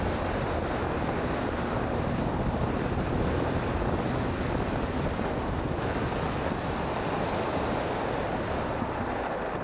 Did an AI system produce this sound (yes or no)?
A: no